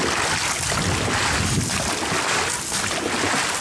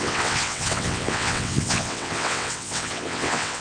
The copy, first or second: second